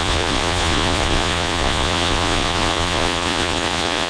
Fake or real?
fake